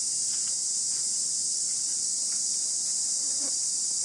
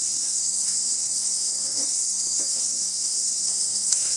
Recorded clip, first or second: first